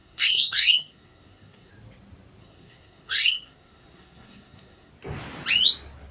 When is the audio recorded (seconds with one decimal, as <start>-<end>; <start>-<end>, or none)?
1.7-2.4; 4.9-6.1